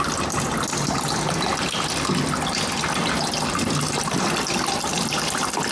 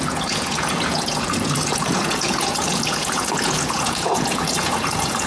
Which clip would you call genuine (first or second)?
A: first